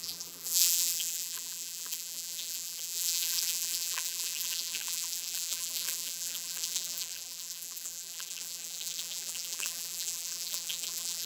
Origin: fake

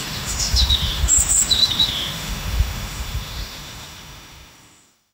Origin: fake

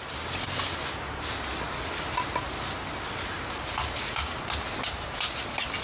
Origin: real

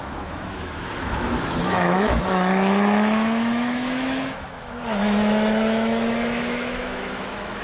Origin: fake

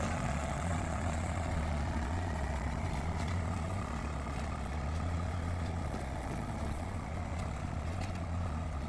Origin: fake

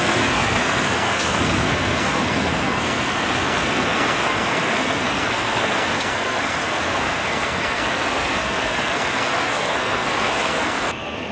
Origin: fake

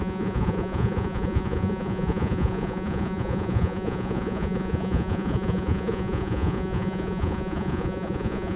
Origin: fake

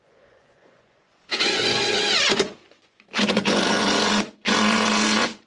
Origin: fake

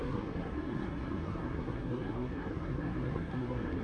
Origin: fake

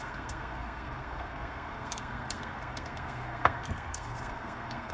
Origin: fake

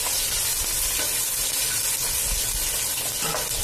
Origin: real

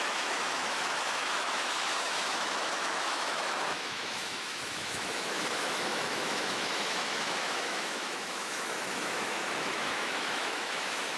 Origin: fake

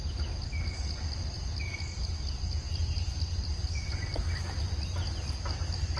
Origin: real